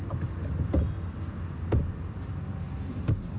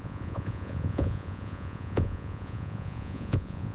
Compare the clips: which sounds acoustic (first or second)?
first